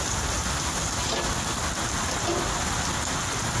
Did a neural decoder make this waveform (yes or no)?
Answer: no